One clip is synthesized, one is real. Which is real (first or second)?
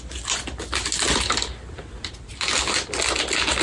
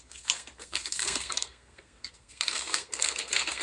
first